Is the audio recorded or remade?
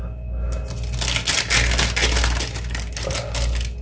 recorded